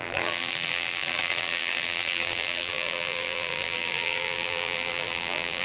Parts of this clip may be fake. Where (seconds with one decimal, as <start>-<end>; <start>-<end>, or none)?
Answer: 0.0-5.6

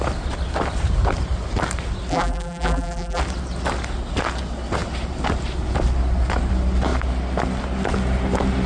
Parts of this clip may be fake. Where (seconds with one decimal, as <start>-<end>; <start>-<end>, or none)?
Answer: 2.1-3.2